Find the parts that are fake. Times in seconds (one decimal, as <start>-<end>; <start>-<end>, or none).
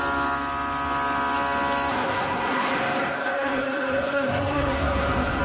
1.9-5.4